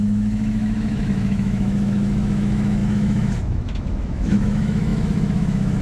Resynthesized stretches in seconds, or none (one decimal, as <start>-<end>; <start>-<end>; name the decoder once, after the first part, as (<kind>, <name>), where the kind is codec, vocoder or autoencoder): 0.0-5.8 (autoencoder, DAC-VAE)

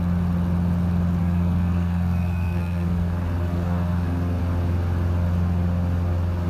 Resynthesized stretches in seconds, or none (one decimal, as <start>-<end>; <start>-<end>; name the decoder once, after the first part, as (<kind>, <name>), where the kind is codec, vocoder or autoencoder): 1.2-4.4 (codec, SNAC)

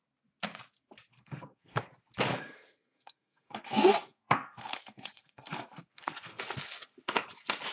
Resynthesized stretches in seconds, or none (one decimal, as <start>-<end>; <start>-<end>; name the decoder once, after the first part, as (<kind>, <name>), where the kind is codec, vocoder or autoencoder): 1.1-1.8 (codec, SNAC); 2.3-6.4